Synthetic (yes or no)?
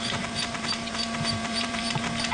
yes